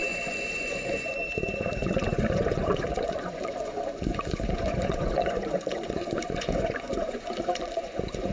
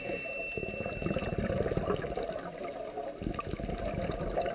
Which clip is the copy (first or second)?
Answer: first